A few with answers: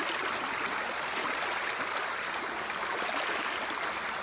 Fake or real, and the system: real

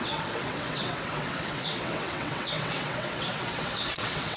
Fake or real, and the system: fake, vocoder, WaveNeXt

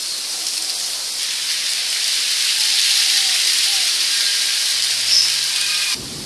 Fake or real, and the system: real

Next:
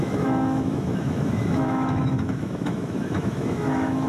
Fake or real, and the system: fake, autoencoder, DAC-VAE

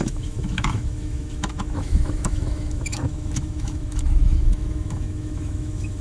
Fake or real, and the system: fake, autoencoder, DAC-VAE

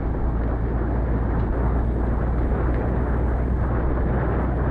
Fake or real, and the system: real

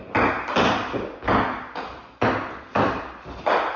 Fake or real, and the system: real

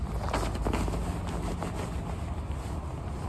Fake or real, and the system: real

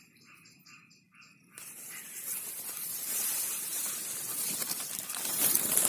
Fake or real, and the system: fake, vocoder, BigVGAN v2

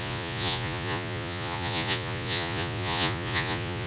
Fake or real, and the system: fake, vocoder, Vocos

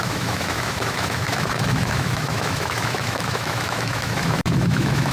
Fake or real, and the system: fake, autoencoder, DAC-VAE